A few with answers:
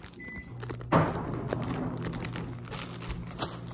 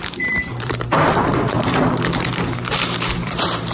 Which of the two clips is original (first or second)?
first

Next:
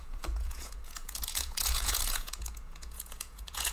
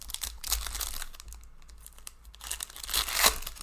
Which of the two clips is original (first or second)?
second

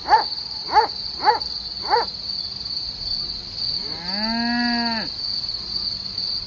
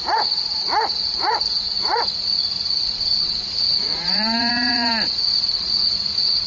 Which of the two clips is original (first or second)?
first